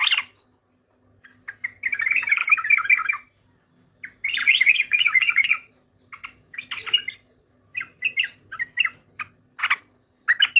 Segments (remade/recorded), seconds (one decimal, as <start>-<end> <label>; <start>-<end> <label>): 0.0-4.4 recorded; 4.4-5.7 remade; 5.7-10.6 recorded